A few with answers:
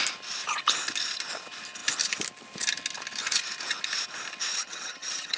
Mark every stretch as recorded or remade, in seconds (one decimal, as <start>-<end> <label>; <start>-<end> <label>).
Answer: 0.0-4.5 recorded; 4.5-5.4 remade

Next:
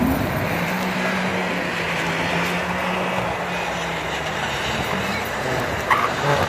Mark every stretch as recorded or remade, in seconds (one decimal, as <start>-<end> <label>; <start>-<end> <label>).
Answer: 0.0-1.3 remade; 1.3-4.0 recorded; 4.0-6.5 remade

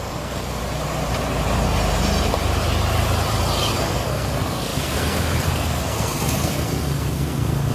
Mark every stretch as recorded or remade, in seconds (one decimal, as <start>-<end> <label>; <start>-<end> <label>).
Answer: 0.0-0.6 remade; 0.6-3.8 recorded; 3.8-7.7 remade

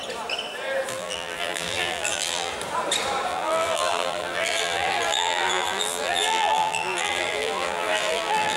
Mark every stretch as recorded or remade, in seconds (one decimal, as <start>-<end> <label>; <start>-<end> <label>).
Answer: 0.0-0.9 recorded; 0.9-2.5 remade; 2.5-3.3 recorded; 3.3-8.6 remade

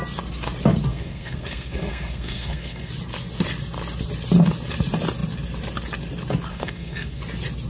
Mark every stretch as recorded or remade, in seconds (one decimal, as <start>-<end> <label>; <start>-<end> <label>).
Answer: 0.0-0.9 recorded; 0.9-2.9 remade; 2.9-6.5 recorded; 6.5-7.2 remade; 7.2-7.7 recorded

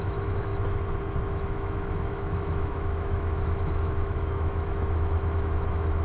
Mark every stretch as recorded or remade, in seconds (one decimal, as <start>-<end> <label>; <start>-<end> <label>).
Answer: 0.0-0.5 remade; 0.5-1.3 recorded; 1.3-6.0 remade